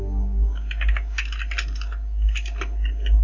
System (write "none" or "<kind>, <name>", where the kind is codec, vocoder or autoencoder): none